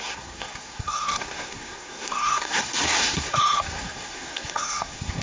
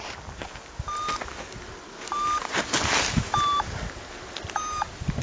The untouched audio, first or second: second